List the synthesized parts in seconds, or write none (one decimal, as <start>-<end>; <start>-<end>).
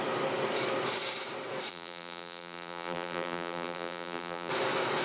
1.7-4.5